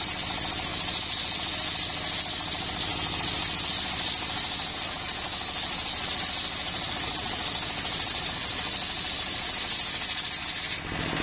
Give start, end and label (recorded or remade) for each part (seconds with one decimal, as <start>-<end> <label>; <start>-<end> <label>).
0.0-11.2 recorded